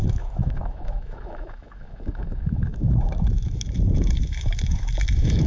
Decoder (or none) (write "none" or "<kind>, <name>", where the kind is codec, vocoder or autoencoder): autoencoder, DAC-VAE